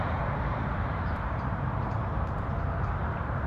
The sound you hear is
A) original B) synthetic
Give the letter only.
B